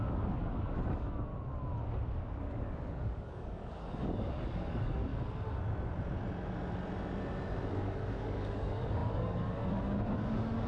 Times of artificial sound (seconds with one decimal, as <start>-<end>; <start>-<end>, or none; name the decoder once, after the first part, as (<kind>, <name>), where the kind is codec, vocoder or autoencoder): 0.0-1.3 (codec, DAC); 2.2-5.1; 7.7-10.7